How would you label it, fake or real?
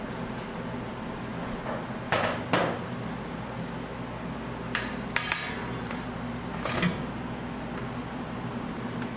real